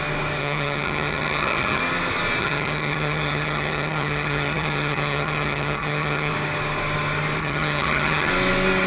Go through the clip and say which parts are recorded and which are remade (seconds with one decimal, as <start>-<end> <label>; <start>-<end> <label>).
0.0-0.4 recorded; 0.4-1.8 remade; 1.8-2.4 recorded; 2.4-6.3 remade; 6.3-7.4 recorded; 7.4-8.3 remade; 8.3-8.9 recorded